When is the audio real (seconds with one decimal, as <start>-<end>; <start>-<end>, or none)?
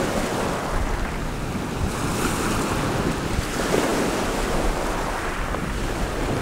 0.0-6.4